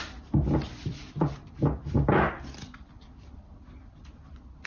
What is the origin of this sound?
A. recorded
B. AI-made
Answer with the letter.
B